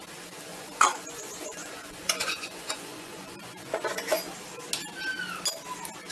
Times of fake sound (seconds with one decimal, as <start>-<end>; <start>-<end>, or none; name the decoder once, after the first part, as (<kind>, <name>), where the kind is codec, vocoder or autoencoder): 0.5-4.2 (vocoder, Vocos)